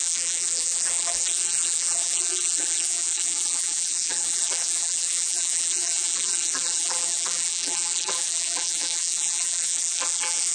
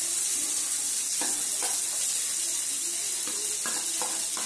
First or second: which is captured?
second